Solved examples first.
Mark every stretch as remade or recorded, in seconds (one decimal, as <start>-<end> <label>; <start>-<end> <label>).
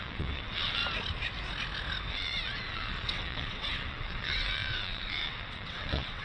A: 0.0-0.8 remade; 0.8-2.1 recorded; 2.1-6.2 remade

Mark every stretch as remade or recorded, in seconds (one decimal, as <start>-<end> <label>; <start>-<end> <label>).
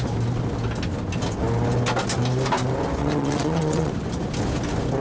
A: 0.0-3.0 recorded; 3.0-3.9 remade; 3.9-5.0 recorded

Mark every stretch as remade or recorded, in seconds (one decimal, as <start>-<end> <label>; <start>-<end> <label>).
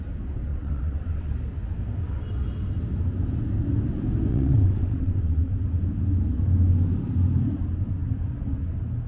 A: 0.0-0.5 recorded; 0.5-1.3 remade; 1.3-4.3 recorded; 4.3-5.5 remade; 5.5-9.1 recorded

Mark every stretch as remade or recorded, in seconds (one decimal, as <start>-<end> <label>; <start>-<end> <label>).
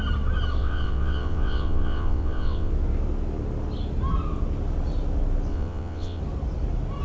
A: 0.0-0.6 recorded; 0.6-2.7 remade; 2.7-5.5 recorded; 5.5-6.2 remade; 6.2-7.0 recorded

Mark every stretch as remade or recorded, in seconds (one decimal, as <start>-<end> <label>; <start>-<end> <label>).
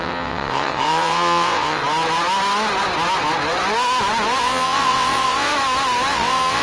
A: 0.0-1.8 remade; 1.8-4.4 recorded; 4.4-5.5 remade; 5.5-6.1 recorded; 6.1-6.6 remade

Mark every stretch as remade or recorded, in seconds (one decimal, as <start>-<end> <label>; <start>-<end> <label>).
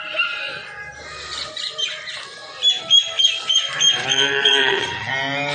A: 0.0-4.1 recorded; 4.1-5.1 remade; 5.1-5.5 recorded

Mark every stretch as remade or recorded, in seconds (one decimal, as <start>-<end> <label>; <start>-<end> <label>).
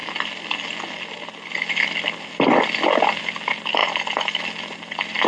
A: 0.0-5.3 recorded